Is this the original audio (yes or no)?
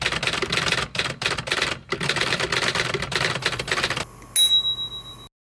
yes